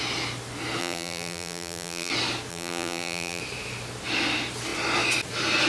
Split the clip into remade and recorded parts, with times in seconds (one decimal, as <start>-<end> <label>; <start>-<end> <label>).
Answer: 0.0-0.8 recorded; 0.8-2.1 remade; 2.1-2.5 recorded; 2.5-3.4 remade; 3.4-5.7 recorded